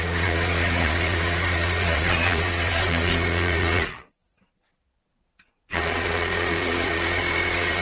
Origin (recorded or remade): remade